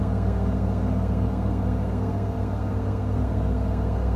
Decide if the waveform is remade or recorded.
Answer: remade